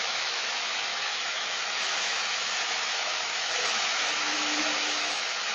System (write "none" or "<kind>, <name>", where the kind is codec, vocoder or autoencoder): autoencoder, DAC-VAE